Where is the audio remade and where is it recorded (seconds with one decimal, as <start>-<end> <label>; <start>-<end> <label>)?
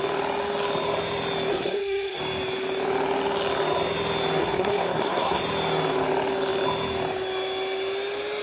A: 0.0-1.5 recorded; 1.5-2.2 remade; 2.2-4.4 recorded; 4.4-5.4 remade; 5.4-8.4 recorded